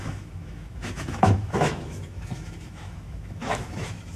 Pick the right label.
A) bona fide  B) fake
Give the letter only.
B